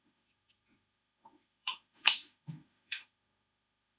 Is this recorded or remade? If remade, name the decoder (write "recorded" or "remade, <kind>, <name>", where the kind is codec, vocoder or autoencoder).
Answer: remade, autoencoder, DAC-VAE